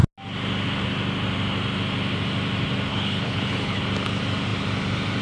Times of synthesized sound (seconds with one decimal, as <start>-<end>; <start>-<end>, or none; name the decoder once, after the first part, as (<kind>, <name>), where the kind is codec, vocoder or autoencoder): 2.9-3.8 (codec, HILCodec)